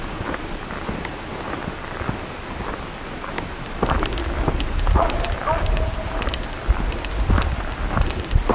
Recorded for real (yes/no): yes